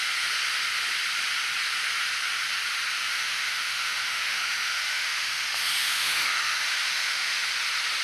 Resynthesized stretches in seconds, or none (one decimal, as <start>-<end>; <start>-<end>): 3.0-7.5